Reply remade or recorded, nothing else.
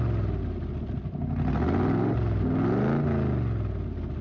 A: recorded